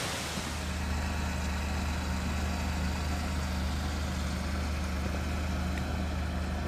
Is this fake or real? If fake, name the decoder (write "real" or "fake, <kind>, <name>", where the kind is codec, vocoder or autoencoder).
real